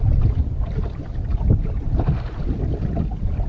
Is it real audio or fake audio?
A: real